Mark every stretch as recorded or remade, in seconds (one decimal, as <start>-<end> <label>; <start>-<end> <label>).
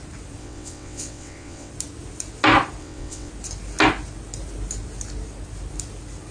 0.0-0.4 recorded; 0.4-1.7 remade; 1.7-2.8 recorded; 2.8-3.3 remade; 3.3-6.3 recorded